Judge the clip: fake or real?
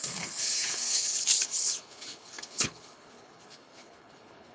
fake